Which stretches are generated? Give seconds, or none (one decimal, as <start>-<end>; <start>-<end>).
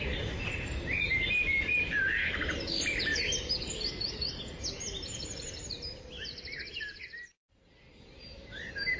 none